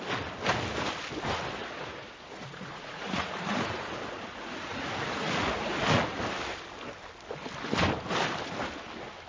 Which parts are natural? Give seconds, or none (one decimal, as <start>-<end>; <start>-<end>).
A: 0.0-1.6; 6.2-9.3